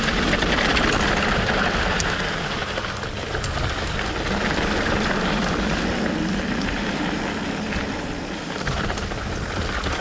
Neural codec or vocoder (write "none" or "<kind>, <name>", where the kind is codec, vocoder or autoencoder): none